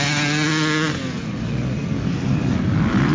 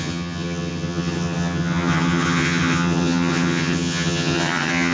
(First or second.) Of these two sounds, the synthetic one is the second